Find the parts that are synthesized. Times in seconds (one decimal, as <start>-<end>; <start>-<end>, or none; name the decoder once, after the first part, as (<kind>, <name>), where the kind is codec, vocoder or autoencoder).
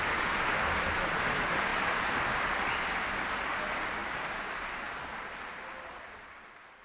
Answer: none